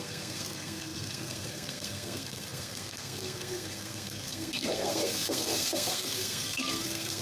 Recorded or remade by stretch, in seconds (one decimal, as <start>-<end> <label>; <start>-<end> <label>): 0.0-7.2 remade